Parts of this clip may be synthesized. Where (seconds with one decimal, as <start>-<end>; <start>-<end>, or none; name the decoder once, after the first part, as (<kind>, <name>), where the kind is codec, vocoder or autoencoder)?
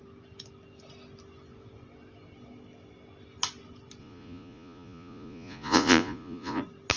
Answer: 4.0-6.6 (vocoder, Vocos)